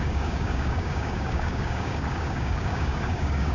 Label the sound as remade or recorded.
remade